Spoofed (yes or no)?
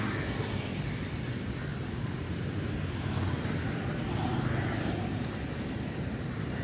no